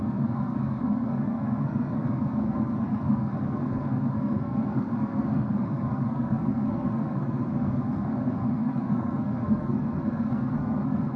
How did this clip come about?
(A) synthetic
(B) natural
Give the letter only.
A